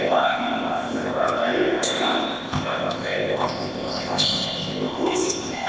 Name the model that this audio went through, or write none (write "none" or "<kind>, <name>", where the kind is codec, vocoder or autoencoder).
codec, ZipCodec